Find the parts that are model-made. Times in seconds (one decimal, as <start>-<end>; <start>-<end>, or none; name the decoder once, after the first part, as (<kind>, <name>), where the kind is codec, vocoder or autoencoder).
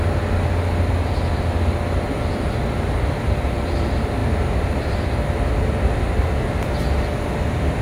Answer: none